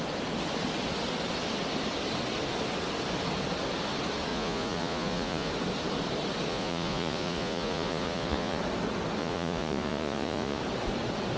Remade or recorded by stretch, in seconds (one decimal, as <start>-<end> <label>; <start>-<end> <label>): 0.0-4.3 recorded; 4.3-5.5 remade; 5.5-6.5 recorded; 6.5-8.6 remade; 8.6-9.2 recorded; 9.2-10.6 remade; 10.6-11.4 recorded